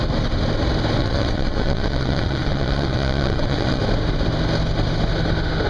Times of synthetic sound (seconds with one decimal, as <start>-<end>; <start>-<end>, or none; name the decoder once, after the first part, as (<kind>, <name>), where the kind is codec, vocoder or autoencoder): 1.0-3.8 (vocoder, WaveNeXt)